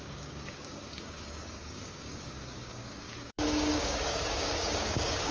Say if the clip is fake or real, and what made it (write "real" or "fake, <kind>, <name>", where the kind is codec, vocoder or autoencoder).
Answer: fake, codec, DAC